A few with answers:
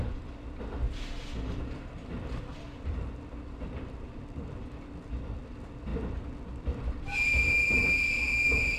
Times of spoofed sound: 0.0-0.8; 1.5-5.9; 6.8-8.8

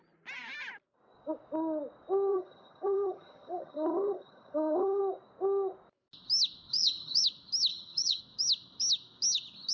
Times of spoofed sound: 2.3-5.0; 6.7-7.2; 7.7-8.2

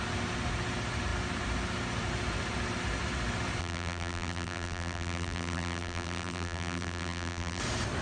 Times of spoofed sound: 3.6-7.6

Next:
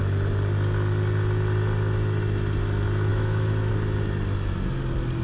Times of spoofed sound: 3.1-3.7